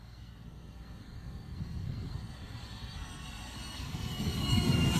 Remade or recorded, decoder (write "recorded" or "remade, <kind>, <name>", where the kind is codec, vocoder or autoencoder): remade, codec, SNAC